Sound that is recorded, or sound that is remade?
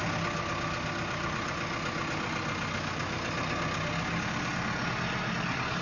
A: recorded